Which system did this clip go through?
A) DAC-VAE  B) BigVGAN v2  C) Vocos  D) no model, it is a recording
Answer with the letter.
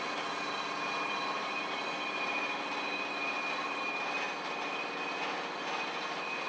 D